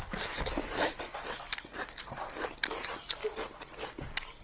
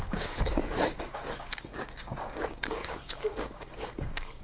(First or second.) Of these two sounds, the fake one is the second